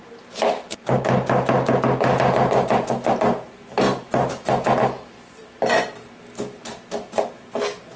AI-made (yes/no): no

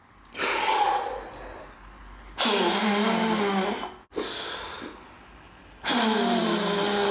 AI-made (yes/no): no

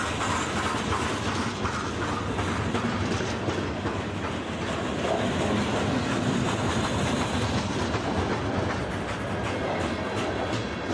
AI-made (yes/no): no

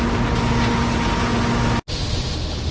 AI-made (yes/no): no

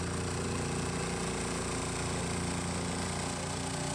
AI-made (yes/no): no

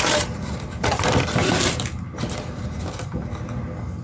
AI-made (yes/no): no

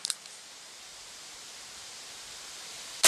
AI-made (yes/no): no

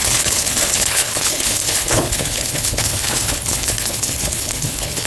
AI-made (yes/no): yes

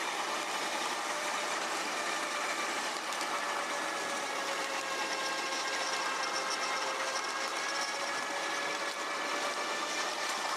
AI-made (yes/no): no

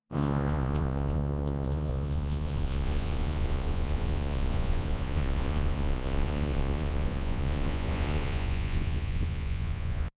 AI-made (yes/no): yes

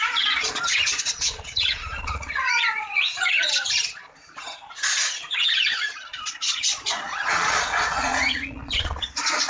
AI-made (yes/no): yes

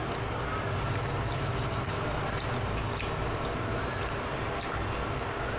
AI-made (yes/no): no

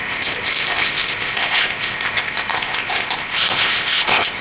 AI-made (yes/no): yes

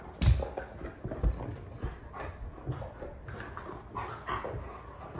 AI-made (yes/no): no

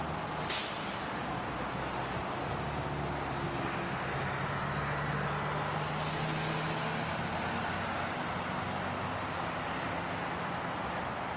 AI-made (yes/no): no